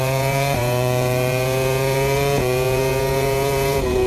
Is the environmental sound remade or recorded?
remade